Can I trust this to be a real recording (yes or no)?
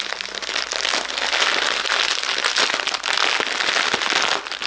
yes